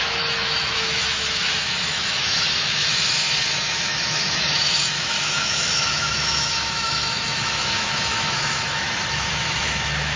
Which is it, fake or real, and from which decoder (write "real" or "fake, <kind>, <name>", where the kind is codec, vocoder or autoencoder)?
fake, autoencoder, DAC-VAE